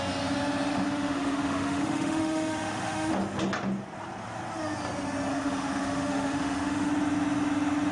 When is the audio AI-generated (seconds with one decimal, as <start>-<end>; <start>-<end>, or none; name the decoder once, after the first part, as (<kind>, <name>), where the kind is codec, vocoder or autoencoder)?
0.7-3.1 (autoencoder, DAC-VAE); 5.3-6.9